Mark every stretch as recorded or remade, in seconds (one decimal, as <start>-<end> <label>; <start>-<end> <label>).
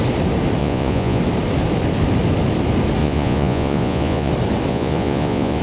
0.0-0.6 recorded; 0.6-1.2 remade; 1.2-3.0 recorded; 3.0-4.3 remade; 4.3-4.7 recorded; 4.7-5.6 remade